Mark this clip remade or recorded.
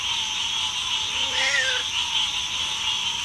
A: recorded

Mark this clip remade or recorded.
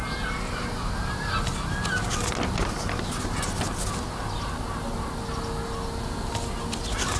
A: recorded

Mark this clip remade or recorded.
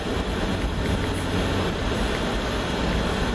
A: recorded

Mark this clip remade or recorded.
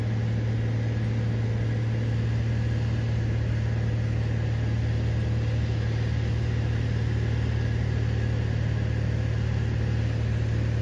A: recorded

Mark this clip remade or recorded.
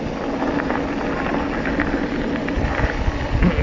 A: recorded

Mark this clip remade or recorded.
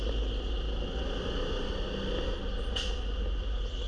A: recorded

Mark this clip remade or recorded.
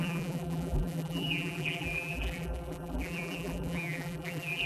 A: remade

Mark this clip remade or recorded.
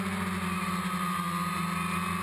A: recorded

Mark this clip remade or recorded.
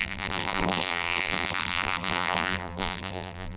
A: remade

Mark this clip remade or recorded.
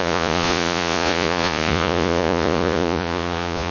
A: remade